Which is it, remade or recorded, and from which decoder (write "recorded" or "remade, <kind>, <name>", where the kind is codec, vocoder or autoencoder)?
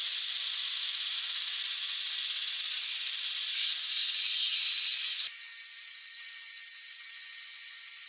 recorded